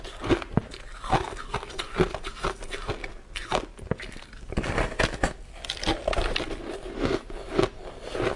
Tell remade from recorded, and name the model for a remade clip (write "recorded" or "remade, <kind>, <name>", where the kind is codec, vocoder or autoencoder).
recorded